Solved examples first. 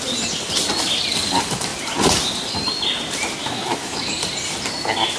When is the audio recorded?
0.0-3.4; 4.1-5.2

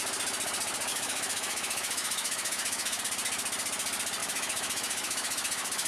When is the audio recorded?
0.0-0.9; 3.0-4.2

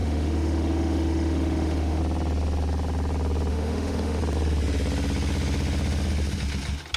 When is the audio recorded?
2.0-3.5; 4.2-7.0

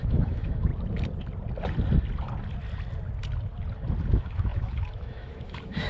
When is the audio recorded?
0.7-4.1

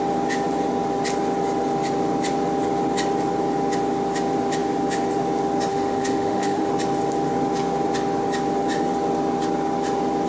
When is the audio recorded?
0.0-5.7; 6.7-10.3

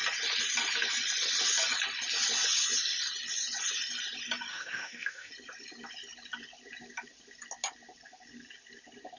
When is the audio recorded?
0.0-4.5; 5.3-9.2